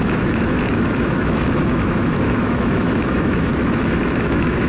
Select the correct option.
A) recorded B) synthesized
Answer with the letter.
B